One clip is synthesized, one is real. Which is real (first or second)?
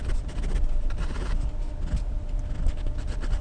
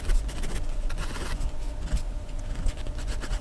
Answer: first